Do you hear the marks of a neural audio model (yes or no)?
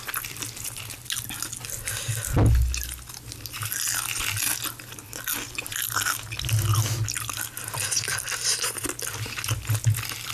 no